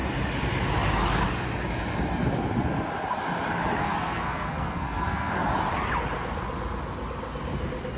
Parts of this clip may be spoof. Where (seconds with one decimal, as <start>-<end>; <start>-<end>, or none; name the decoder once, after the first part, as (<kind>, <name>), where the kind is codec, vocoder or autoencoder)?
3.8-5.3 (codec, SNAC)